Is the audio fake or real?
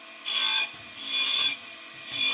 real